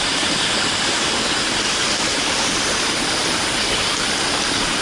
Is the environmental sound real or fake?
real